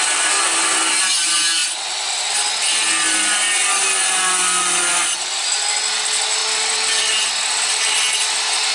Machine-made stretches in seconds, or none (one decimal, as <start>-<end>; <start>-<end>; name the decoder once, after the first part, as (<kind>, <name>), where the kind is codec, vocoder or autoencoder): 6.4-7.0 (vocoder, BigVGAN v2)